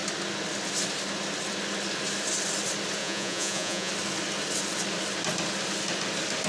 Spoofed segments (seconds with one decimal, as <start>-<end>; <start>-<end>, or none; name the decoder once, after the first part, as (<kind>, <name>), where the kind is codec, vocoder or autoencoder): 3.0-3.9 (vocoder, Vocos)